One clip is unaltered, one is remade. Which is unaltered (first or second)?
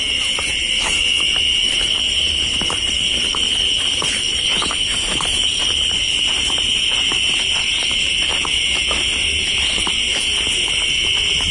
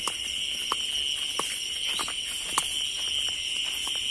second